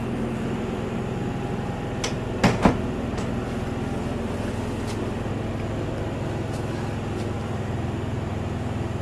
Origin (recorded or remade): recorded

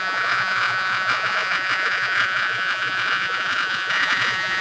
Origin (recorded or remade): remade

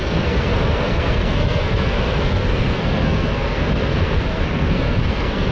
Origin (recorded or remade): remade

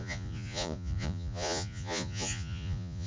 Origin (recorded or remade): remade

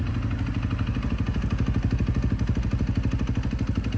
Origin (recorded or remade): recorded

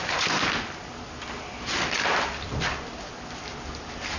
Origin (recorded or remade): recorded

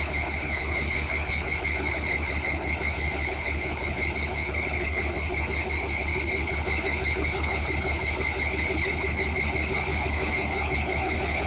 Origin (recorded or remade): remade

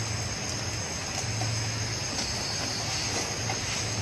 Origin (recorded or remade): recorded